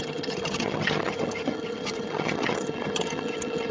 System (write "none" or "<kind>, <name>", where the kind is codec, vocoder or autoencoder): vocoder, HiFi-GAN